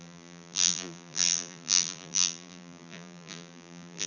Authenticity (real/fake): fake